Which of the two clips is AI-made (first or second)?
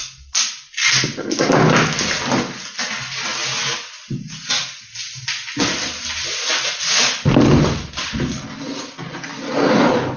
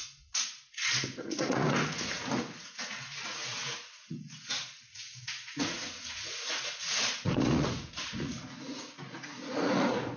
second